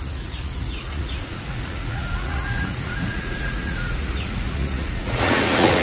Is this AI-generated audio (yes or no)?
yes